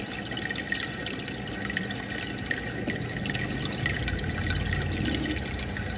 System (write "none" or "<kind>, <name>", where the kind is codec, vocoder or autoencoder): none